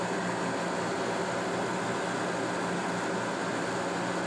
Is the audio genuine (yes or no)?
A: yes